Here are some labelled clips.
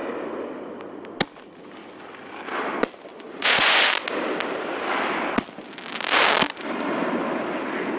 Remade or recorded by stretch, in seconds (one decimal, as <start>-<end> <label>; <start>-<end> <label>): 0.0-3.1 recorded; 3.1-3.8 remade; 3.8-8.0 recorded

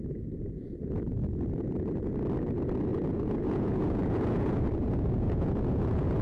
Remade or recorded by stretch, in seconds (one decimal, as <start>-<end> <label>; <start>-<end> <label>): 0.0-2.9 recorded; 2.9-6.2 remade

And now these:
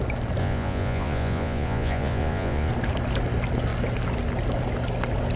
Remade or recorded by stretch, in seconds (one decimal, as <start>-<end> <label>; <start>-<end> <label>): 0.0-0.4 recorded; 0.4-2.7 remade; 2.7-5.4 recorded

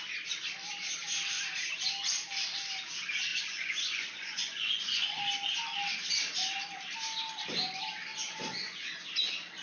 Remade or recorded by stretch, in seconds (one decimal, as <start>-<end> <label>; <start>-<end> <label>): 0.0-3.3 recorded; 3.3-5.2 remade; 5.2-8.1 recorded; 8.1-8.9 remade; 8.9-9.6 recorded